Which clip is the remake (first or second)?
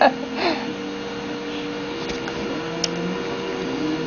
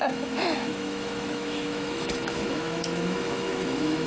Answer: second